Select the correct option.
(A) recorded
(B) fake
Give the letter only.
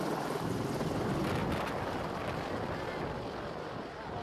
A